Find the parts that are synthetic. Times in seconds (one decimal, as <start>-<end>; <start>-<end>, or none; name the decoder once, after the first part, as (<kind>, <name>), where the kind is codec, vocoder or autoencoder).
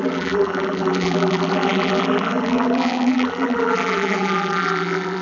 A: 0.0-5.2 (vocoder, BigVGAN v2)